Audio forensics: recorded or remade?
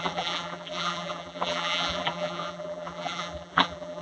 remade